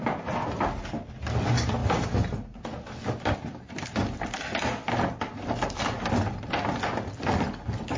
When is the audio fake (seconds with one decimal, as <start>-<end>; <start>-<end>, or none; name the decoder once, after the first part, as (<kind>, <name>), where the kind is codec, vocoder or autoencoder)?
none